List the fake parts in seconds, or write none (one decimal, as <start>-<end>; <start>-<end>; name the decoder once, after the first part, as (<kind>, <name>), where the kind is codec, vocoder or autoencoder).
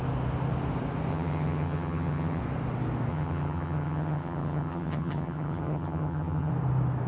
1.1-2.4 (vocoder, HiFi-GAN); 3.1-6.5